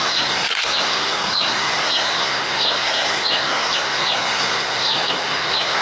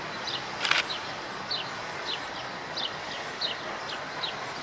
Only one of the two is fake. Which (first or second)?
first